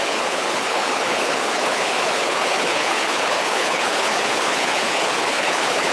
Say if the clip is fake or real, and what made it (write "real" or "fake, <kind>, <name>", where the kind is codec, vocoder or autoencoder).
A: fake, codec, HILCodec